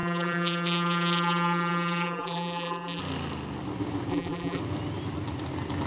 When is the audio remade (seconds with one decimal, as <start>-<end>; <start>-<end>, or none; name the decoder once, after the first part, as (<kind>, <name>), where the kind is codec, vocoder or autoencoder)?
0.0-3.0 (vocoder, BigVGAN v2); 4.1-4.6